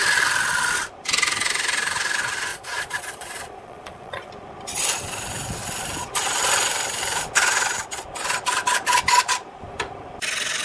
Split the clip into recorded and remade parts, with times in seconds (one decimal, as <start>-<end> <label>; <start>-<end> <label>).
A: 0.0-2.5 recorded; 2.5-4.3 remade; 4.3-10.6 recorded

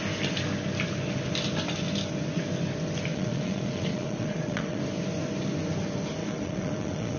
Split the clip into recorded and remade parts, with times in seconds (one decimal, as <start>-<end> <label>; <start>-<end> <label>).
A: 0.0-3.1 recorded; 3.1-4.8 remade; 4.8-6.2 recorded; 6.2-7.2 remade

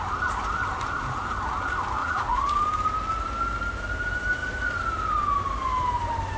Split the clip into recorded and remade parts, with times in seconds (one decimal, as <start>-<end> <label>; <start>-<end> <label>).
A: 0.0-2.0 recorded; 2.0-2.6 remade; 2.6-6.4 recorded